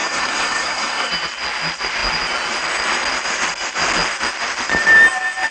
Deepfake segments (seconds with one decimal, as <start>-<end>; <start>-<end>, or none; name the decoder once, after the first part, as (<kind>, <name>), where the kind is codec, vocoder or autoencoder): 0.0-1.1 (codec, SNAC)